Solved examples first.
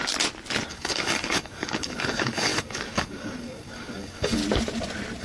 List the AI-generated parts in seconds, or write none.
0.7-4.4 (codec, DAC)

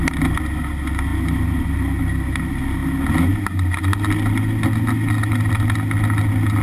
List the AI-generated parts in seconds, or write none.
none

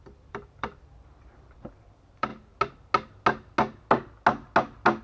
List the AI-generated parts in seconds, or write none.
0.0-2.3 (vocoder, BigVGAN v2)

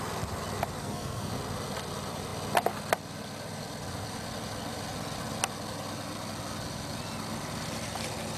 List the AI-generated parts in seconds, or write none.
0.8-1.3 (codec, SNAC)

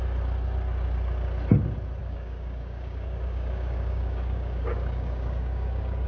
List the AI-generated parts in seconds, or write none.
2.0-6.1 (codec, DAC)

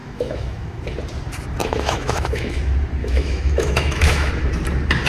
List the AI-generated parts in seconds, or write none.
0.0-0.8 (autoencoder, DAC-VAE); 1.6-2.6; 3.0-4.3